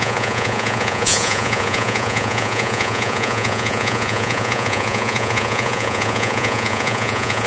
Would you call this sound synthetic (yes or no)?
yes